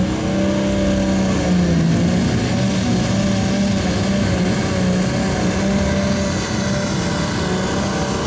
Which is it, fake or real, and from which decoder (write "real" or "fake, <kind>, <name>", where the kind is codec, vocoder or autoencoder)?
real